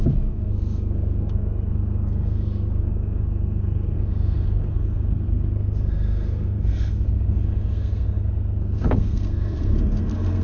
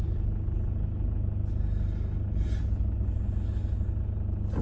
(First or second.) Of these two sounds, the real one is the second